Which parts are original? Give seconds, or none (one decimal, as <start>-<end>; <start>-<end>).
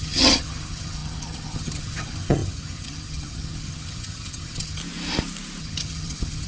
4.8-5.6